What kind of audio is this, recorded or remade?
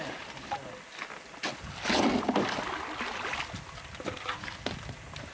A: recorded